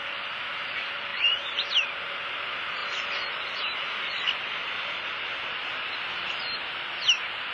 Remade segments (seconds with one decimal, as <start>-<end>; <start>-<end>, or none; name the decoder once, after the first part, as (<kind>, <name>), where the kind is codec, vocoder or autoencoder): none